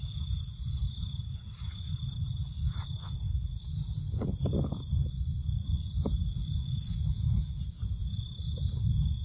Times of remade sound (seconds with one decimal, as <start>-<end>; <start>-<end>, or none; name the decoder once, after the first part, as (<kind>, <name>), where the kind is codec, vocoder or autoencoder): 6.9-7.5 (autoencoder, DAC-VAE)